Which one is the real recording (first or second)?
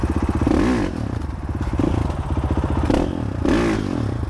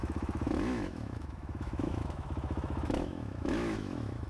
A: first